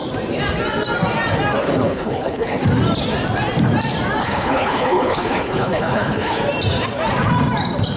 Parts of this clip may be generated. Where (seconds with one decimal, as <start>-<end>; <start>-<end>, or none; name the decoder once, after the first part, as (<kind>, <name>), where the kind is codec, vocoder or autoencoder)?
1.6-2.6 (codec, HILCodec); 4.2-6.4